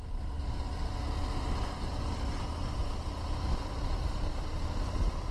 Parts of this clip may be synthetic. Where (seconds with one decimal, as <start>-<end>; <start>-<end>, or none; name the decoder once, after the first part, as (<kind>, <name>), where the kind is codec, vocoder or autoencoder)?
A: 0.0-0.4 (vocoder, BigVGAN v2); 3.6-4.3